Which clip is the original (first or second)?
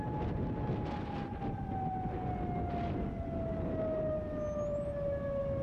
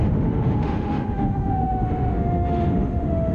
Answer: first